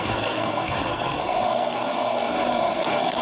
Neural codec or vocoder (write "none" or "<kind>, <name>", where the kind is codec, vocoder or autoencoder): codec, SNAC